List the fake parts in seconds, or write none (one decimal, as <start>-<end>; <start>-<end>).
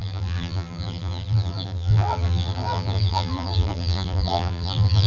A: 0.0-5.1